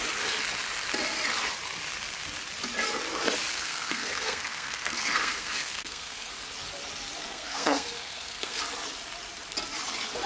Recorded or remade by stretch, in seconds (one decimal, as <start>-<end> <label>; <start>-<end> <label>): 0.0-3.5 recorded; 3.5-6.3 remade; 6.3-7.2 recorded; 7.2-8.6 remade; 8.6-10.3 recorded